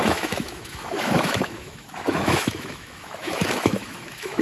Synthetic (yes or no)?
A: yes